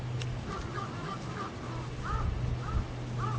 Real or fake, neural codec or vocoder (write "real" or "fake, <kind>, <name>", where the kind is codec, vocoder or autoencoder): real